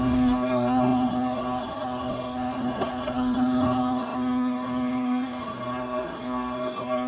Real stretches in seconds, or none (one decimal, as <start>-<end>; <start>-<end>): none